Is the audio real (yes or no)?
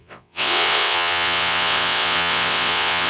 no